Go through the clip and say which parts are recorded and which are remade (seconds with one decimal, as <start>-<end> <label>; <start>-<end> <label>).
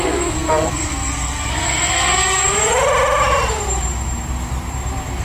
0.0-2.2 remade; 2.2-5.2 recorded